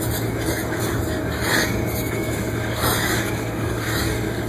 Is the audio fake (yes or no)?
yes